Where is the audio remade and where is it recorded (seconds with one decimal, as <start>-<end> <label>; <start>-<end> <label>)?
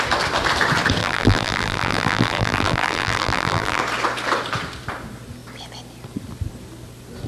0.0-1.0 recorded; 1.0-3.8 remade; 3.8-7.3 recorded